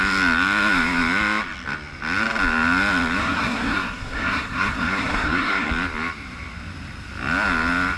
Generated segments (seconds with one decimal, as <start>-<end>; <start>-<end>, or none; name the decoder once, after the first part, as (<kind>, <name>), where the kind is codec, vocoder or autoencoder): 3.2-5.7 (codec, SNAC)